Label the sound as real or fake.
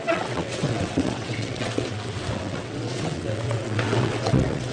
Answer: fake